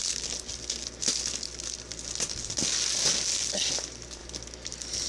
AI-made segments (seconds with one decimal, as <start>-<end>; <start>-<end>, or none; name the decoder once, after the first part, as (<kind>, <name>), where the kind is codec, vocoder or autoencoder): none